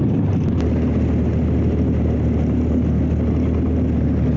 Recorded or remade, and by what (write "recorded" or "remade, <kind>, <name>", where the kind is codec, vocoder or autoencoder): recorded